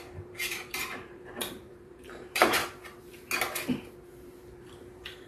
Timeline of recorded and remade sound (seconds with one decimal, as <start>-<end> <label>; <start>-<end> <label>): 0.0-2.6 remade; 2.6-4.6 recorded; 4.6-5.3 remade